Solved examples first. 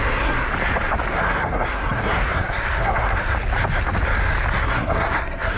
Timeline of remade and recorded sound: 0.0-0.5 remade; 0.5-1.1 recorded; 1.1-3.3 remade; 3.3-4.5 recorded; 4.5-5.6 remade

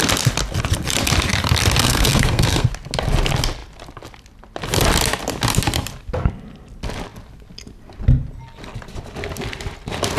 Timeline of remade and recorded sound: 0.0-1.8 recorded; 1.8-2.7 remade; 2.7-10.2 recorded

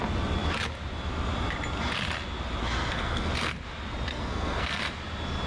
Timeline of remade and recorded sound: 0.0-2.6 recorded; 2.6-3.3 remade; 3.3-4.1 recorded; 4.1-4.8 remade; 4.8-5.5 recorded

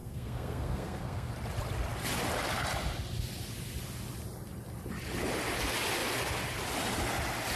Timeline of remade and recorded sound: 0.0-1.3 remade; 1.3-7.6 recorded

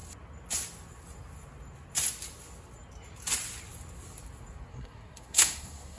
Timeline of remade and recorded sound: 0.0-4.7 recorded; 4.7-6.0 remade

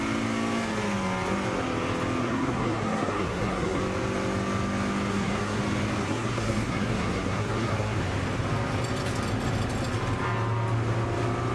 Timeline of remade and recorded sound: 0.0-2.2 recorded; 2.2-3.8 remade; 3.8-5.1 recorded; 5.1-5.6 remade; 5.6-6.0 recorded; 6.0-8.0 remade; 8.0-11.5 recorded

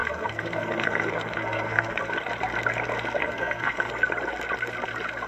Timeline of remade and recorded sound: 0.0-2.0 remade; 2.0-3.2 recorded; 3.2-3.9 remade; 3.9-5.3 recorded